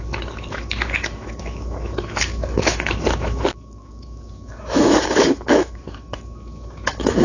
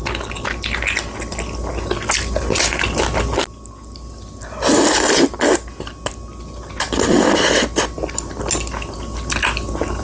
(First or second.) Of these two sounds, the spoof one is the first